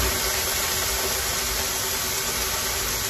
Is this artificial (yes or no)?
no